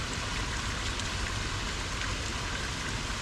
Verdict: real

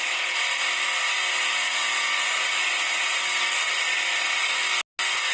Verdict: real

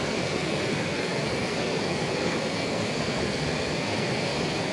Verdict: fake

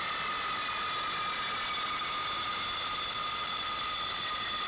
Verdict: real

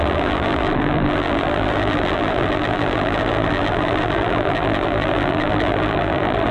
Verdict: fake